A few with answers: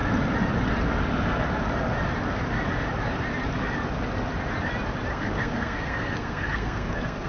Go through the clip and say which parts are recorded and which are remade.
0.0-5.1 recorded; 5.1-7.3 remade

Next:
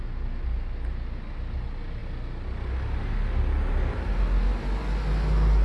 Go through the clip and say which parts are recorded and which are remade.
0.0-5.6 recorded

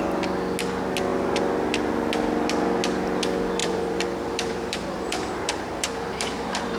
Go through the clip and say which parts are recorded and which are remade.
0.0-3.6 recorded; 3.6-6.8 remade

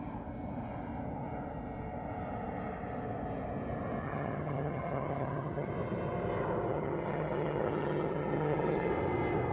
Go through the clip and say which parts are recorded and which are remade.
0.0-4.0 recorded; 4.0-5.7 remade; 5.7-6.7 recorded; 6.7-8.9 remade; 8.9-9.5 recorded

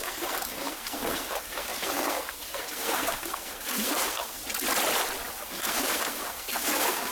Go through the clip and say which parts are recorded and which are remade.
0.0-4.4 remade; 4.4-5.3 recorded; 5.3-7.1 remade

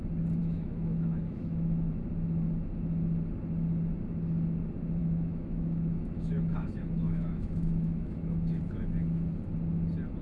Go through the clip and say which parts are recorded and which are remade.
0.0-0.4 recorded; 0.4-1.9 remade; 1.9-5.0 recorded; 5.0-8.6 remade; 8.6-10.2 recorded

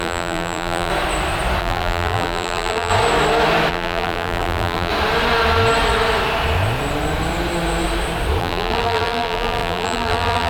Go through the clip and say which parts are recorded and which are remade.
0.0-0.9 remade; 0.9-1.6 recorded; 1.6-2.9 remade; 2.9-3.7 recorded; 3.7-4.9 remade; 4.9-8.4 recorded; 8.4-10.5 remade

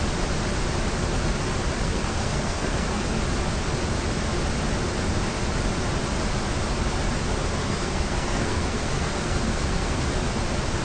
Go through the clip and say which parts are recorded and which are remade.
0.0-1.8 recorded; 1.8-3.0 remade; 3.0-7.6 recorded; 7.6-10.1 remade; 10.1-10.8 recorded